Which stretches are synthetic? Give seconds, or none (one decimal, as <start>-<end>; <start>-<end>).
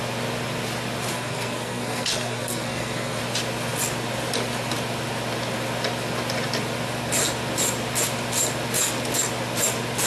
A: 1.1-3.2